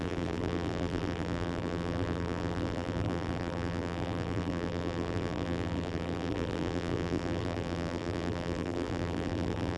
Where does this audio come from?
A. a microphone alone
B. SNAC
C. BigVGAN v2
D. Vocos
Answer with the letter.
C